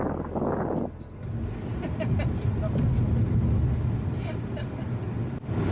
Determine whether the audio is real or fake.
real